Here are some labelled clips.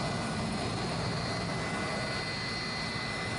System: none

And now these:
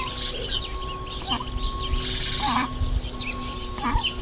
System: none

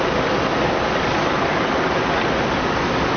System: none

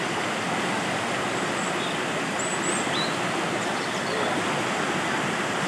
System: none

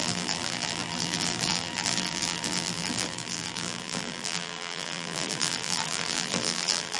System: vocoder, BigVGAN v2